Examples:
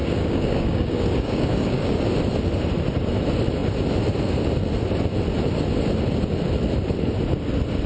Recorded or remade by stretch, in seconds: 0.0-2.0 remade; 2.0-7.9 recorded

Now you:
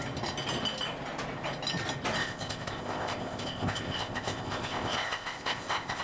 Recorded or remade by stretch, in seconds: 0.0-2.2 recorded; 2.2-6.0 remade

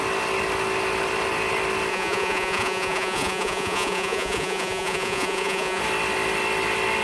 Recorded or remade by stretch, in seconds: 0.0-1.9 recorded; 1.9-5.8 remade; 5.8-7.0 recorded

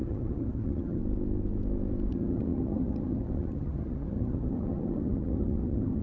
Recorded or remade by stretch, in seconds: 0.0-1.0 remade; 1.0-2.1 recorded; 2.1-6.0 remade

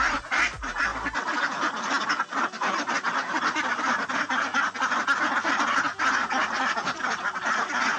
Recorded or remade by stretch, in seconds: 0.0-8.0 recorded

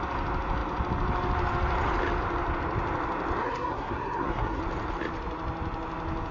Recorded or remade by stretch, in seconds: 0.0-3.4 recorded; 3.4-4.6 remade; 4.6-6.3 recorded